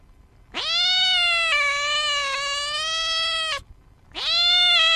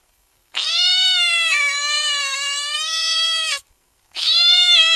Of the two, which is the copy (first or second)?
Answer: second